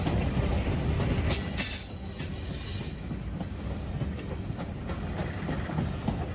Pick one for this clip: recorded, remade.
recorded